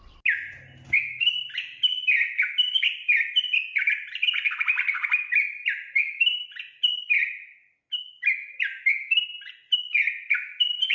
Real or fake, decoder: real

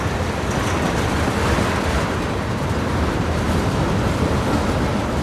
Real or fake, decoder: real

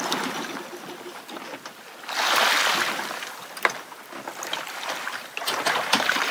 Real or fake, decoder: real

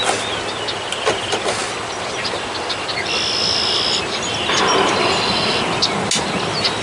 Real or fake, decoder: real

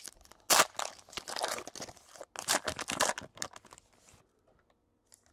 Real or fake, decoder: real